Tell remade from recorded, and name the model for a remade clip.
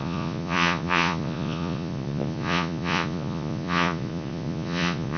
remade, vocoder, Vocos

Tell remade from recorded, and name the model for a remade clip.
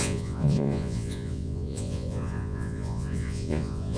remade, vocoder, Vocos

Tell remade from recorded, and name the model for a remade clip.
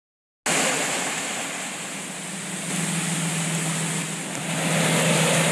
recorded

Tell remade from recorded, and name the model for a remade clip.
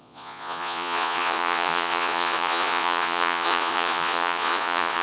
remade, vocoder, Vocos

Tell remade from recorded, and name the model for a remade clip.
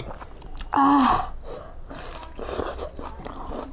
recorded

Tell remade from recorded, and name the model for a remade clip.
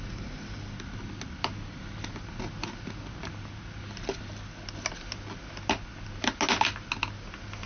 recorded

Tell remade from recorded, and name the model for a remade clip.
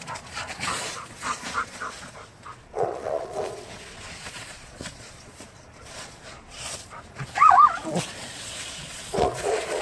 remade, vocoder, Vocos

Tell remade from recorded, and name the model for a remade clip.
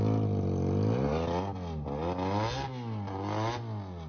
recorded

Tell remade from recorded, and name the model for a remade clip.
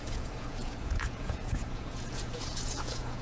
remade, vocoder, Vocos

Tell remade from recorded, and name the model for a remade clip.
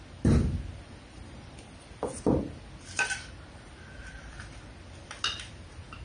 recorded